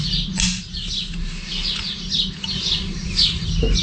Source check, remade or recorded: recorded